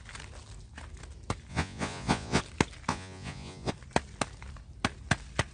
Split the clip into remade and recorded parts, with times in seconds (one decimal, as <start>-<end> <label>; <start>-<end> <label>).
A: 0.0-1.5 recorded; 1.5-2.4 remade; 2.4-2.9 recorded; 2.9-3.7 remade; 3.7-5.5 recorded